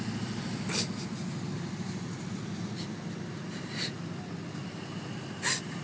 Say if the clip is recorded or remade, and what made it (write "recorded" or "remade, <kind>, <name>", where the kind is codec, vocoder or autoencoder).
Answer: recorded